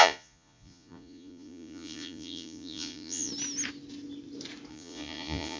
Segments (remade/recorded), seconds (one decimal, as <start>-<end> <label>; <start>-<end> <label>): 0.0-3.3 remade; 3.3-4.7 recorded; 4.7-5.6 remade